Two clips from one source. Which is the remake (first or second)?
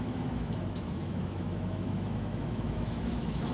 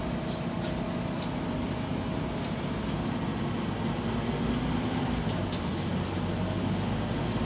first